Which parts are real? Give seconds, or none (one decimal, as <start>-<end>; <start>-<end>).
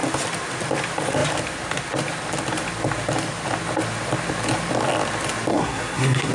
0.0-5.5